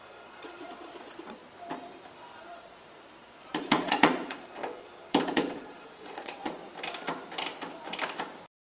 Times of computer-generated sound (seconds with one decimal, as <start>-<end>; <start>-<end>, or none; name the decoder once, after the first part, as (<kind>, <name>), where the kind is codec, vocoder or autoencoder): 0.0-1.4 (vocoder, Vocos); 2.4-2.8; 3.4-4.6; 5.2-6.6